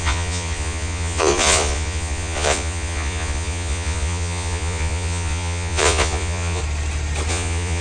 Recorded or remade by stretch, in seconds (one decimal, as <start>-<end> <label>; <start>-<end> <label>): 0.0-6.6 remade; 6.6-7.3 recorded; 7.3-7.8 remade